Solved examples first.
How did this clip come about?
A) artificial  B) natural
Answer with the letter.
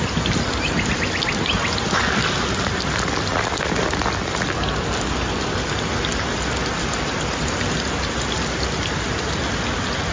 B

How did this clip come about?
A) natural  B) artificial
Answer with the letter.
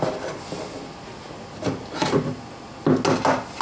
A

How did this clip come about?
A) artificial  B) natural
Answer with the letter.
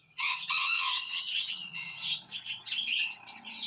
A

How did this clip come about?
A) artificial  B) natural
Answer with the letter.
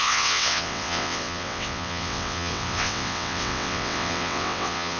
A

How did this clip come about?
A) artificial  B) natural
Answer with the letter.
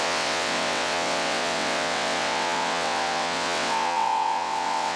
A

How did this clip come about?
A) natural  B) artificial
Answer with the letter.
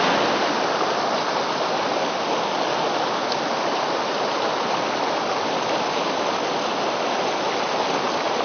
A